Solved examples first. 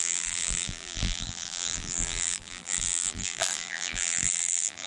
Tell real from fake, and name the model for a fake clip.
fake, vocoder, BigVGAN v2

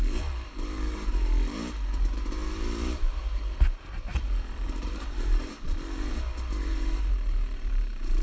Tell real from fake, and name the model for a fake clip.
fake, vocoder, BigVGAN v2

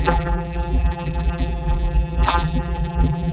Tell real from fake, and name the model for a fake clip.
fake, vocoder, BigVGAN v2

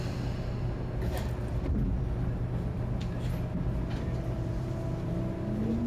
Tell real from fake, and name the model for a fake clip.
real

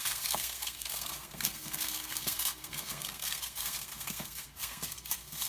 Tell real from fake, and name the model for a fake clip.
fake, codec, SNAC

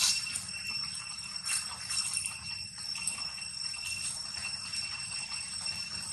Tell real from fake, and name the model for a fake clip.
real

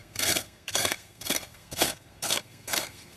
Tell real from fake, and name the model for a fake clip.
fake, codec, SNAC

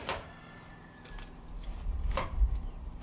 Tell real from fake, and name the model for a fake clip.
fake, vocoder, BigVGAN v2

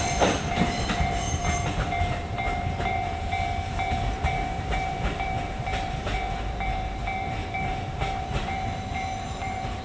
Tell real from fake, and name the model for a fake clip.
fake, vocoder, BigVGAN v2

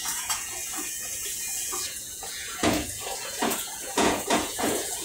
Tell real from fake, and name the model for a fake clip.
fake, vocoder, Vocos